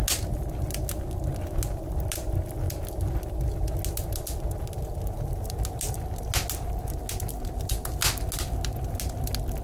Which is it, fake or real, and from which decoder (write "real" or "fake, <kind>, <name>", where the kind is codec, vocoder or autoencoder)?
real